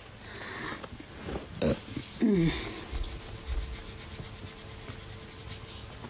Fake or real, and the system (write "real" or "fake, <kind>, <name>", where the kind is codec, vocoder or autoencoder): real